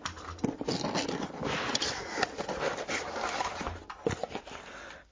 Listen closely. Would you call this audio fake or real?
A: real